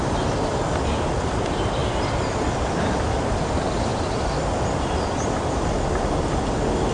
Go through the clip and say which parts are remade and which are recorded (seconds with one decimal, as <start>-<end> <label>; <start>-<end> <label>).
0.0-6.9 recorded